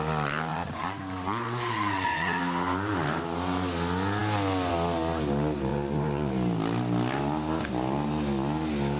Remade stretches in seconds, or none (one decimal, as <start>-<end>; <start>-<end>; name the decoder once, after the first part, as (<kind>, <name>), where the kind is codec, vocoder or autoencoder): 0.5-2.4 (vocoder, Vocos); 5.7-6.3

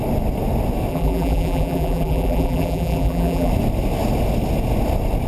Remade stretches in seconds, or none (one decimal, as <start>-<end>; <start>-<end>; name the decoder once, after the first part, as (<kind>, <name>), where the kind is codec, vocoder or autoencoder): 0.9-3.5 (vocoder, BigVGAN v2)

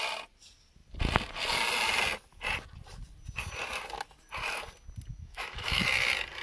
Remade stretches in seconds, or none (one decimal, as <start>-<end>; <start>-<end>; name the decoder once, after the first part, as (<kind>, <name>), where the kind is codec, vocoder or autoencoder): 5.1-5.8 (autoencoder, DAC-VAE)

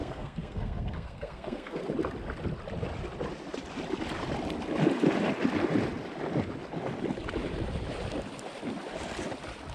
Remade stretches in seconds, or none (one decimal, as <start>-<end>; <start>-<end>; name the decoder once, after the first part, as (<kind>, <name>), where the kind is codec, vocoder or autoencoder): 0.0-1.8 (codec, SNAC)

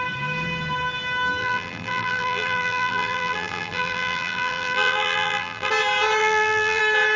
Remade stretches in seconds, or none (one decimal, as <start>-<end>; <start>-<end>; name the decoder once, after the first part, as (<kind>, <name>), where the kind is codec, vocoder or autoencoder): 1.4-5.7 (vocoder, BigVGAN v2); 6.2-6.8

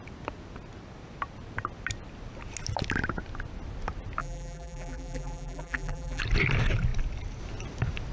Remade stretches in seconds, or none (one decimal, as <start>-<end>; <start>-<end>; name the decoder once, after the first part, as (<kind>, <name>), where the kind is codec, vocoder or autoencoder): 4.2-6.2 (vocoder, BigVGAN v2)